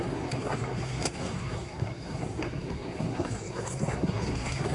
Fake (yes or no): yes